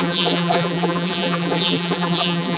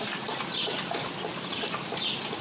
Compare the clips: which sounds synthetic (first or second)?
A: first